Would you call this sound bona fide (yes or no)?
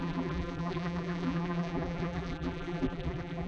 no